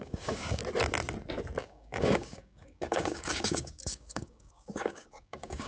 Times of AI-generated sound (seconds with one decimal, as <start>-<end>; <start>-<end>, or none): 0.0-0.6; 1.6-5.7